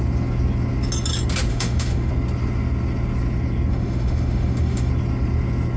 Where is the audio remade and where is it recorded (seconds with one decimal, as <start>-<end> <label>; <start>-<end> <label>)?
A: 0.0-1.5 recorded; 1.5-2.1 remade; 2.1-3.7 recorded; 3.7-4.9 remade; 4.9-5.8 recorded